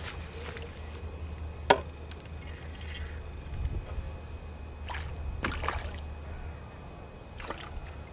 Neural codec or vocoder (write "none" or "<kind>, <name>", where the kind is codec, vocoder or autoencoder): none